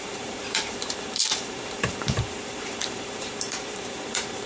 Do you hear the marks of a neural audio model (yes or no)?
yes